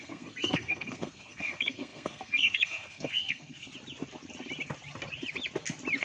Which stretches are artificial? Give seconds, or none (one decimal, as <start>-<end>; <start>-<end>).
0.0-3.7